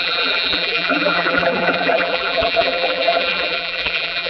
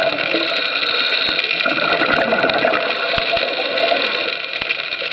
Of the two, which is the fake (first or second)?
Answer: first